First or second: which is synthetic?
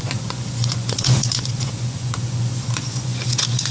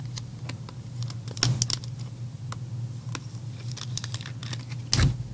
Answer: first